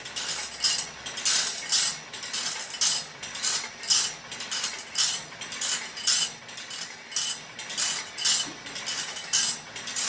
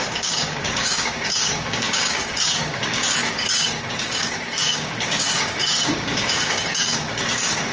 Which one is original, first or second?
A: first